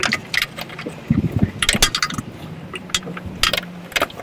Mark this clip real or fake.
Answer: real